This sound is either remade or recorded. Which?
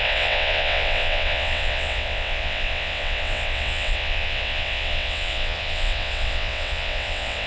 remade